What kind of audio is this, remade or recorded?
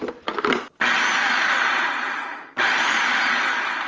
recorded